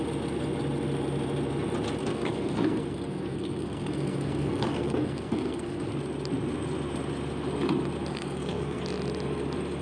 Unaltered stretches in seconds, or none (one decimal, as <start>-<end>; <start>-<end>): 0.0-2.0; 5.9-8.1; 8.8-9.8

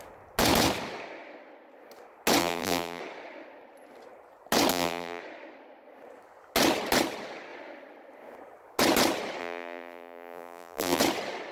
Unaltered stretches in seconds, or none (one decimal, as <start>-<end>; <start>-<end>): 0.0-2.4; 3.0-4.7; 5.2-9.4; 11.0-11.5

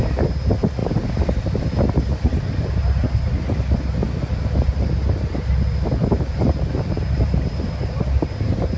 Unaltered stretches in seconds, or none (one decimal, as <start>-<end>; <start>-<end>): 0.0-8.8

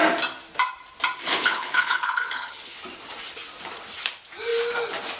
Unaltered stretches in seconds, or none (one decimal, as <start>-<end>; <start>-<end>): 0.0-1.2; 2.8-5.2

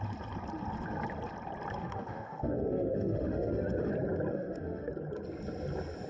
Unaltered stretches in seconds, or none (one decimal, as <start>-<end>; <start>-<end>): 0.0-1.8; 3.9-4.3; 4.9-6.1

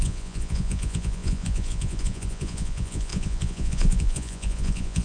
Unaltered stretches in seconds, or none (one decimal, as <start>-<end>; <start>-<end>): none

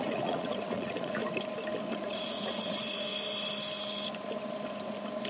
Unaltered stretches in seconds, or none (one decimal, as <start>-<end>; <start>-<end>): 1.2-1.9; 3.1-5.3

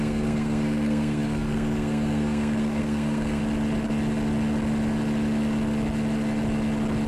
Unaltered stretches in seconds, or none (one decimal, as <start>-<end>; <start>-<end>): 3.4-7.1